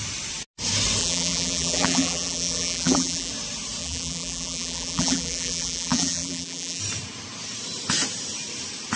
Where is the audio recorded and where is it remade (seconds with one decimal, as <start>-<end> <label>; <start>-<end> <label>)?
0.0-1.0 recorded; 1.0-3.3 remade; 3.3-3.8 recorded; 3.8-6.8 remade; 6.8-9.0 recorded